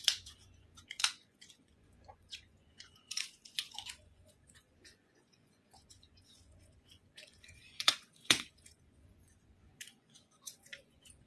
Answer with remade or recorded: remade